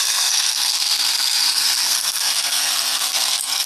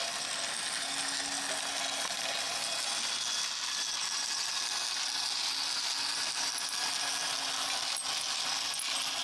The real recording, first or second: second